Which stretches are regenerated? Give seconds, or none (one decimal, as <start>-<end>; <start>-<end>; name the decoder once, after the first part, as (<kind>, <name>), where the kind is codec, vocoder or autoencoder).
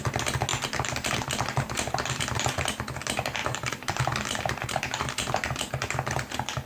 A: 0.5-2.2 (vocoder, BigVGAN v2); 3.4-5.7